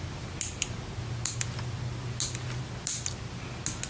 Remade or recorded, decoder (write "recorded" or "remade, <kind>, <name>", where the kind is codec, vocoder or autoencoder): recorded